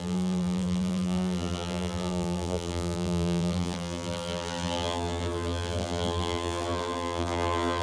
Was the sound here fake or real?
fake